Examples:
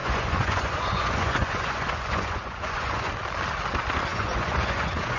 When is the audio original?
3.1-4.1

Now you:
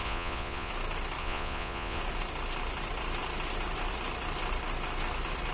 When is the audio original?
0.7-1.2; 2.0-5.5

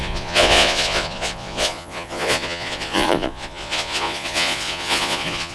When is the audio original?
none

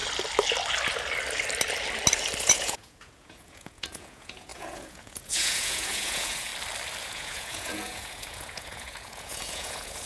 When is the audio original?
0.0-2.4; 6.5-7.0

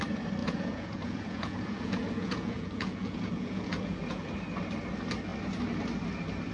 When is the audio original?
0.0-0.4; 4.3-6.5